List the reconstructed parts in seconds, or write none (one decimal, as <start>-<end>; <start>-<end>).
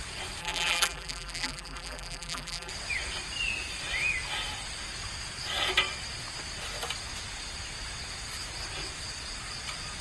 0.4-2.7